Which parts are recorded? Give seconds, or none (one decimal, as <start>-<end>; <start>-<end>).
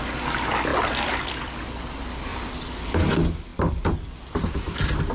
0.0-0.7; 1.6-2.3; 3.1-3.5